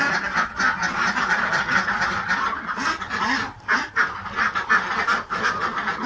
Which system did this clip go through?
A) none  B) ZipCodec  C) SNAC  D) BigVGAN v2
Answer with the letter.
A